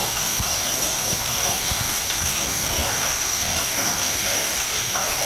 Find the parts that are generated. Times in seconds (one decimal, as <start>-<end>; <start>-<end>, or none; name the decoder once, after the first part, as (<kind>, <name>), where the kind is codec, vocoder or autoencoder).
0.0-5.3 (codec, DAC)